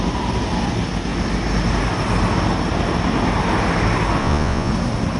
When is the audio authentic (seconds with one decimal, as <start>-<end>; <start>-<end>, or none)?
0.0-4.2; 4.7-5.2